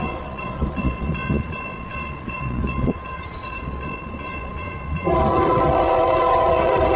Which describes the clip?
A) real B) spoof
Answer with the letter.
B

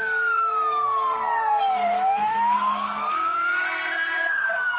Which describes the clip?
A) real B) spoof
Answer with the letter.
B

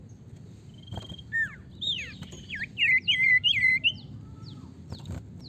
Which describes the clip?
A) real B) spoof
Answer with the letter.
A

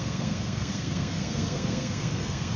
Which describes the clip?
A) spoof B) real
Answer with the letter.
A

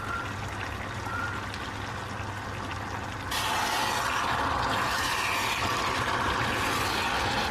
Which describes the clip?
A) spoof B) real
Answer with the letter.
B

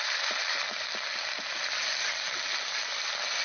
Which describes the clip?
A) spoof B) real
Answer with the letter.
B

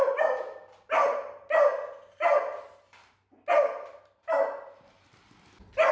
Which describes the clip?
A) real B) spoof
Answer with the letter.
A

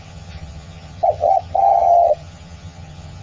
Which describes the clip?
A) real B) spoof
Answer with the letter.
B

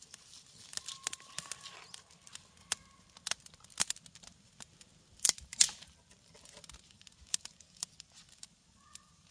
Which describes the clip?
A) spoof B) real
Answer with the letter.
B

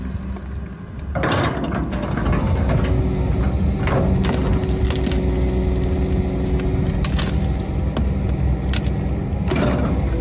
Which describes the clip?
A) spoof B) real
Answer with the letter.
B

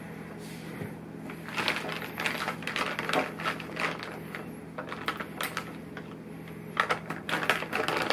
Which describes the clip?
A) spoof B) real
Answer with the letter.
B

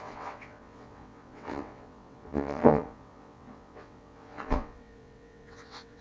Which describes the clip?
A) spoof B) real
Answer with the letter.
A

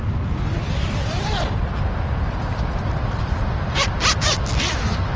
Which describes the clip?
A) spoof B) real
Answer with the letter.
B